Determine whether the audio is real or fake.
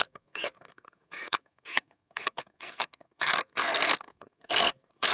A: fake